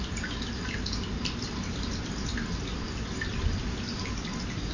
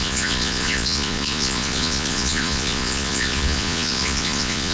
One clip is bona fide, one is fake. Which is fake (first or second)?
second